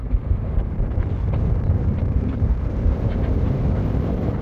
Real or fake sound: fake